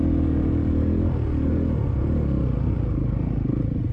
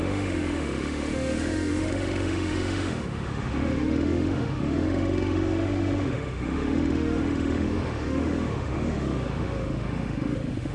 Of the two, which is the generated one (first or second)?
second